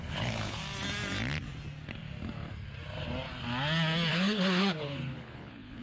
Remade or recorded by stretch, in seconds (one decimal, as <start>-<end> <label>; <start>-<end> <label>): 0.0-0.6 remade; 0.6-4.1 recorded; 4.1-5.8 remade